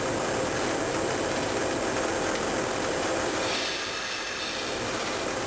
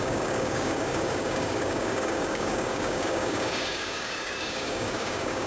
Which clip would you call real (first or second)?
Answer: first